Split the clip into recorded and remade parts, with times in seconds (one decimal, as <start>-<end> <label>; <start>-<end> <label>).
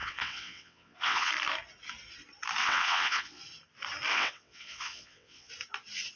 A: 0.0-1.3 remade; 1.3-2.6 recorded; 2.6-3.4 remade; 3.4-4.1 recorded; 4.1-5.5 remade; 5.5-6.2 recorded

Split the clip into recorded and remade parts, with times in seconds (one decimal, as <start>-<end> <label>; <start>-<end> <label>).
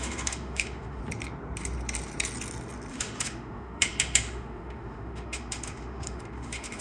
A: 0.0-1.0 remade; 1.0-2.9 recorded; 2.9-6.8 remade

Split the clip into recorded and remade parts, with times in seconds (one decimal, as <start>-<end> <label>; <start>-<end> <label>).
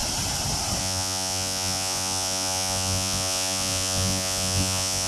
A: 0.0-0.8 recorded; 0.8-5.1 remade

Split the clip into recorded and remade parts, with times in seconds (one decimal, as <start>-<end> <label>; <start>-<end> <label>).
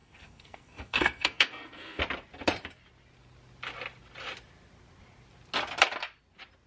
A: 0.0-2.0 remade; 2.0-6.7 recorded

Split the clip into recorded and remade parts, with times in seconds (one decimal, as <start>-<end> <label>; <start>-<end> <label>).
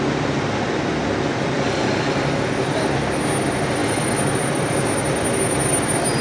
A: 0.0-1.3 recorded; 1.3-2.0 remade; 2.0-3.8 recorded; 3.8-6.2 remade